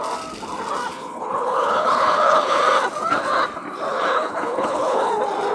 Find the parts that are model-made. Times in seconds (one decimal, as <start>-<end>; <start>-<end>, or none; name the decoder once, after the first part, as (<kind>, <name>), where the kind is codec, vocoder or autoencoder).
0.9-2.6 (codec, HILCodec); 3.9-5.1